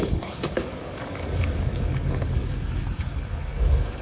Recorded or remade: remade